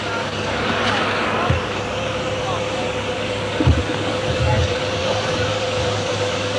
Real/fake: fake